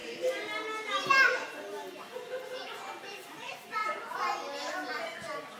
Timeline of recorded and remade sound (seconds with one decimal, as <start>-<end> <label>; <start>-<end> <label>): 0.0-5.6 recorded